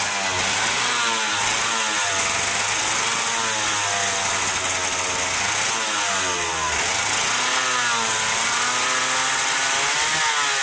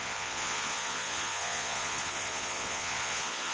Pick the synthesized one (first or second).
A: second